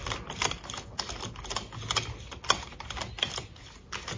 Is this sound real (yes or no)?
yes